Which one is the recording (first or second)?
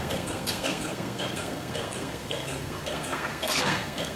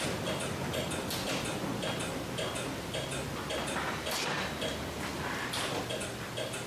second